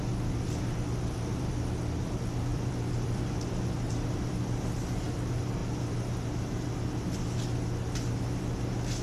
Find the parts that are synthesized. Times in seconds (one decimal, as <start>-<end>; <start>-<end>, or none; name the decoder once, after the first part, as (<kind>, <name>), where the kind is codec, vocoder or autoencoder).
2.5-4.7 (vocoder, BigVGAN v2)